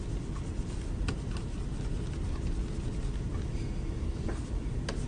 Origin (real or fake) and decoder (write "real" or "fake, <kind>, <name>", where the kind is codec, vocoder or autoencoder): real